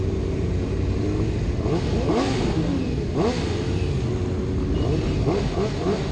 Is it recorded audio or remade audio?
recorded